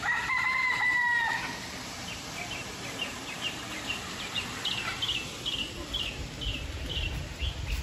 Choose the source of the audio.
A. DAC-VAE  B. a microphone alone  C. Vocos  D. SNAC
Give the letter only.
B